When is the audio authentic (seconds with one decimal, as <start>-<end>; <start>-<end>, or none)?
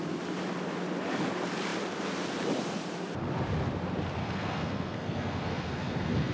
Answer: 0.0-4.2